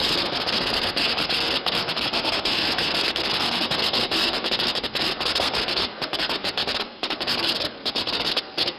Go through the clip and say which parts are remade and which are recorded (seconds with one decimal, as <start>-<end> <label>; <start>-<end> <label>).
0.0-8.8 remade